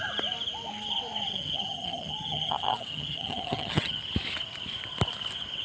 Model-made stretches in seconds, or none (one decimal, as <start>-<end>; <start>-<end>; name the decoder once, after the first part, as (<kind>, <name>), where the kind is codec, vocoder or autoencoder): 1.3-4.0 (vocoder, HiFi-GAN)